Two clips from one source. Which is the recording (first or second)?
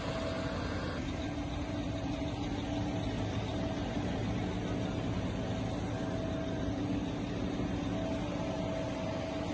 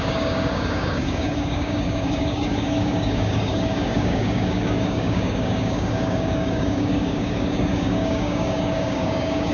first